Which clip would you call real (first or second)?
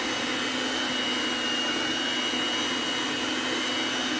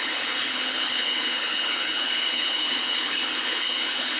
first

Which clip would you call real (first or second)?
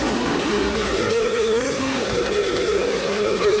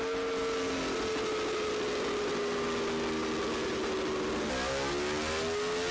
second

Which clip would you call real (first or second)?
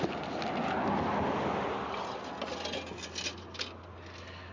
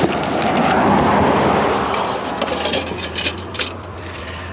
first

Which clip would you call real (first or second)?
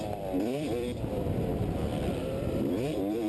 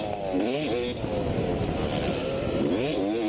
second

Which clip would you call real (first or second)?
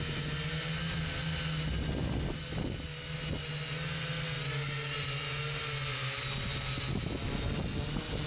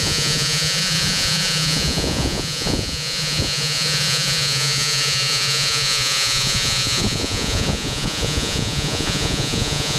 first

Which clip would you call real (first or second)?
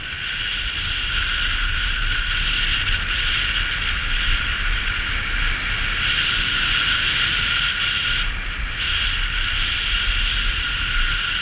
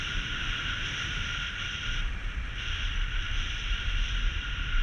first